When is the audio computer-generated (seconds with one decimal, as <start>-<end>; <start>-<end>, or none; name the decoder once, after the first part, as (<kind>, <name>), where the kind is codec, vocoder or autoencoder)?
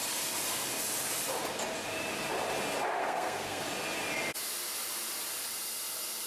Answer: 3.0-3.6 (codec, SNAC)